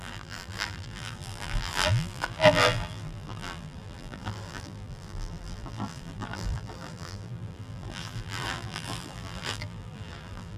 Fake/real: fake